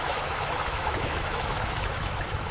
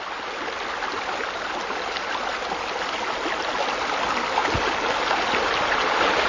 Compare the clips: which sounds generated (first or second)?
first